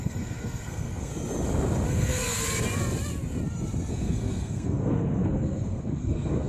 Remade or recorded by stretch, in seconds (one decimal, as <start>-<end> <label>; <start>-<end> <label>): 0.0-1.1 remade; 1.1-1.9 recorded; 1.9-2.4 remade; 2.4-3.9 recorded; 3.9-6.5 remade